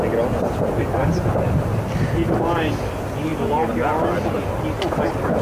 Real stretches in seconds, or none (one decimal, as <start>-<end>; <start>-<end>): 0.0-5.4